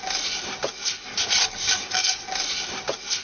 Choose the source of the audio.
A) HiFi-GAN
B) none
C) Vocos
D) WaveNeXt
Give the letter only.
B